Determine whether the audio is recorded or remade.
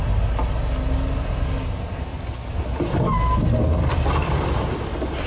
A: recorded